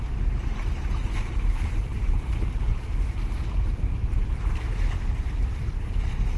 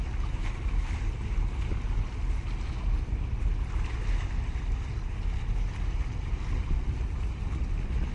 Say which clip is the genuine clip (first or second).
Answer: second